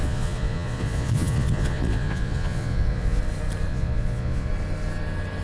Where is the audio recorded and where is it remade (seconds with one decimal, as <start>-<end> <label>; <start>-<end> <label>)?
0.0-3.2 remade; 3.2-3.7 recorded; 3.7-4.5 remade; 4.5-5.4 recorded